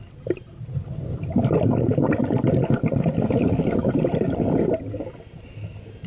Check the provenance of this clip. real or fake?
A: real